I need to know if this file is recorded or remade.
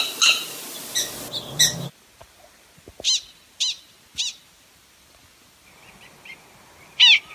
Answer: recorded